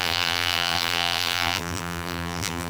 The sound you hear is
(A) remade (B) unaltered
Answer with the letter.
A